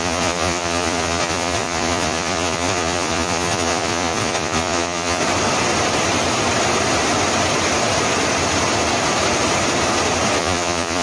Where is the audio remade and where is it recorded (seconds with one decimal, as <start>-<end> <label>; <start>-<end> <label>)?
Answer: 0.0-5.2 remade; 5.2-10.4 recorded; 10.4-11.0 remade